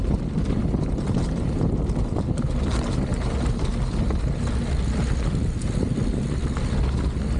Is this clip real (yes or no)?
yes